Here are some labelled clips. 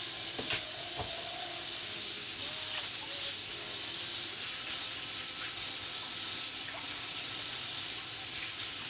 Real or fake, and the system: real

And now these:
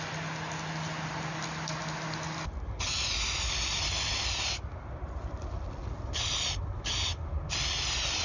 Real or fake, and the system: real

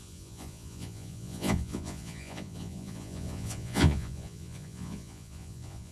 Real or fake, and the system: fake, vocoder, Vocos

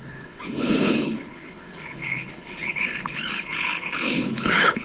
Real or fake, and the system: fake, codec, HILCodec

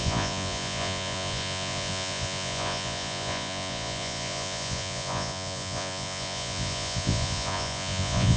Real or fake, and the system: fake, vocoder, Vocos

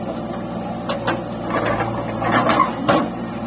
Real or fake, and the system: real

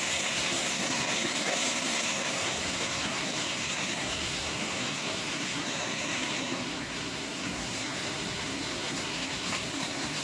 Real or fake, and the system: fake, codec, SNAC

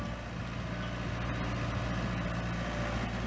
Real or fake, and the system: real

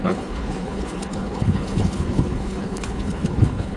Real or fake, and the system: fake, codec, HILCodec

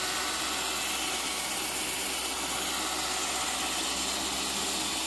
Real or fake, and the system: real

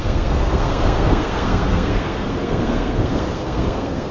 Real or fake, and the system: fake, codec, SNAC